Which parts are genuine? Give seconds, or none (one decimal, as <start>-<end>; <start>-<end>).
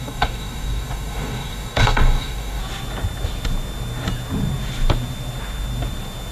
2.6-6.3